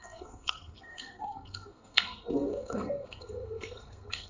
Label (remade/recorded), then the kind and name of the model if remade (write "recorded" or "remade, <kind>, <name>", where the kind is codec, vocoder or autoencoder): remade, codec, SNAC